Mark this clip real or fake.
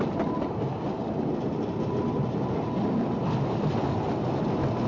real